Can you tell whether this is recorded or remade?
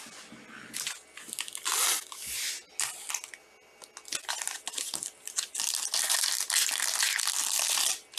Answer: recorded